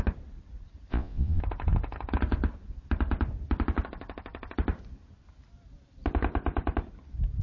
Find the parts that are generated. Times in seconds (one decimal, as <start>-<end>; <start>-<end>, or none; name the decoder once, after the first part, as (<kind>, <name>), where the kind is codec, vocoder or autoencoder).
0.9-1.4 (vocoder, Vocos)